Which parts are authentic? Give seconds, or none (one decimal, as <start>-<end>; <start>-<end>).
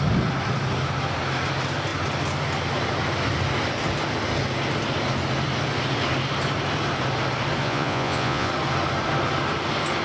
0.0-7.6; 8.5-10.0